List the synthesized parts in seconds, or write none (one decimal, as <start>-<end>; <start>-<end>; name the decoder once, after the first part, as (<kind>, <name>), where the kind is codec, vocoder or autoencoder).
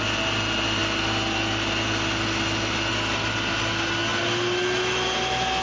none